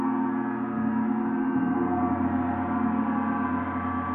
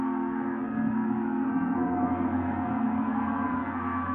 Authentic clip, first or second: first